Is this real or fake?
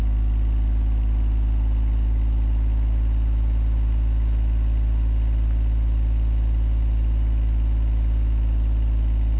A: real